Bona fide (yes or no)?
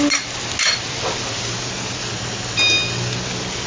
yes